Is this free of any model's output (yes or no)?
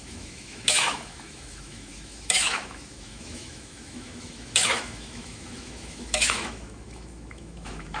no